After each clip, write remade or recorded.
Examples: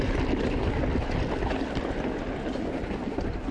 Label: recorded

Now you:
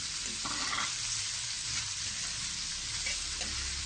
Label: recorded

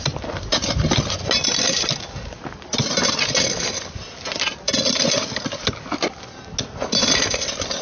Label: recorded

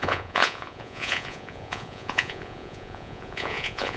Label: remade